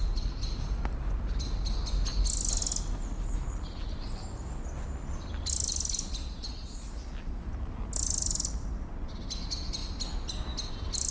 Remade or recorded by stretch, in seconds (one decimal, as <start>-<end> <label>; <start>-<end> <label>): 0.0-11.1 recorded